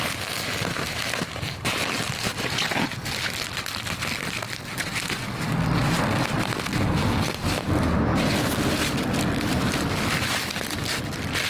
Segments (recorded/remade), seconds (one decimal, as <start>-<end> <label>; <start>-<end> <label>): 0.0-11.5 recorded